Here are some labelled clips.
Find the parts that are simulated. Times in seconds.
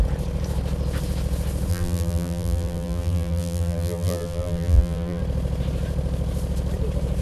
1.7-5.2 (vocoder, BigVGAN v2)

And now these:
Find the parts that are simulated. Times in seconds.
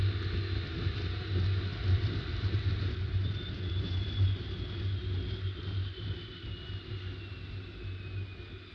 1.7-3.9 (vocoder, BigVGAN v2)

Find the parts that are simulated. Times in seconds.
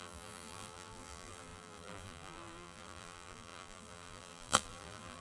0.0-5.2 (vocoder, BigVGAN v2)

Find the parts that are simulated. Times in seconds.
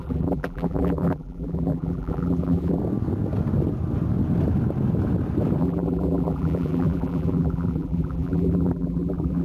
0.0-2.8 (vocoder, BigVGAN v2); 5.6-9.4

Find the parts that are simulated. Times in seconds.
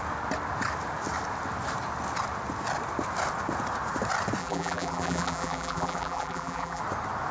4.4-6.8 (vocoder, BigVGAN v2)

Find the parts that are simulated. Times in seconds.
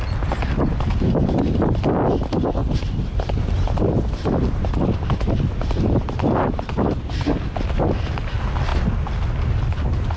2.6-7.5 (vocoder, BigVGAN v2)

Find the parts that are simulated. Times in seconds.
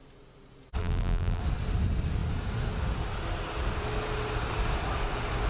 0.8-1.4 (vocoder, BigVGAN v2)